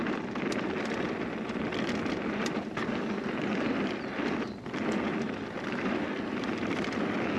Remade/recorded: remade